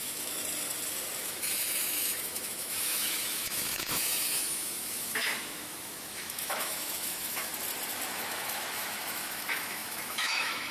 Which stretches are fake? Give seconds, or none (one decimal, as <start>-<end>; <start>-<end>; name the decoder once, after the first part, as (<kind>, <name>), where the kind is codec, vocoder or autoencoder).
0.0-0.4 (autoencoder, DAC-VAE); 1.2-7.5; 8.1-10.7

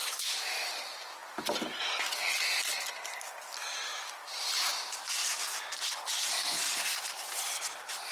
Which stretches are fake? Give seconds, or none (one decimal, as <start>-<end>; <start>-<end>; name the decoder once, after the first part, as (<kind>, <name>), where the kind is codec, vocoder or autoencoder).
0.0-0.7 (autoencoder, DAC-VAE); 3.9-4.5

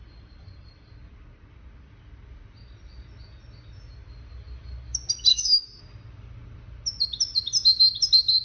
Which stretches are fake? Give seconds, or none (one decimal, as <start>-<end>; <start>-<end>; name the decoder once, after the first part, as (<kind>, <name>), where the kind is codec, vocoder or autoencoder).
5.3-5.8 (autoencoder, DAC-VAE)

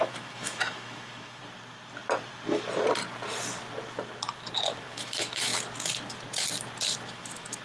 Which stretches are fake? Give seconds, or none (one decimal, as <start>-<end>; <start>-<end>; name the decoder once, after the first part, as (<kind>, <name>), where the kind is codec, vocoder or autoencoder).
0.0-1.4 (autoencoder, DAC-VAE); 4.8-5.5; 7.1-7.6

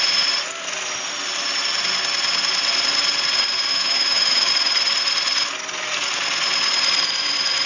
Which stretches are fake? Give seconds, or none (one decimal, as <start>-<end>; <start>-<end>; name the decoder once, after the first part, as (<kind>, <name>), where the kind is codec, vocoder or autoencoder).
3.7-4.5 (autoencoder, DAC-VAE)